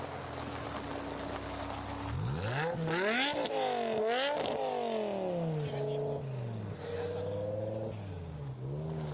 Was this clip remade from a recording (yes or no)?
no